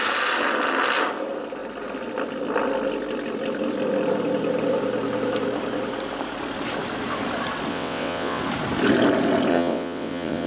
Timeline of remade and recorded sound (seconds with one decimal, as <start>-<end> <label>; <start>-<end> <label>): 0.0-7.7 recorded; 7.7-8.4 remade; 8.4-9.5 recorded; 9.5-10.5 remade